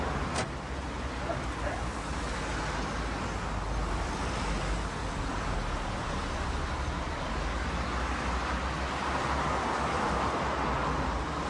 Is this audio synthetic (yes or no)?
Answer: no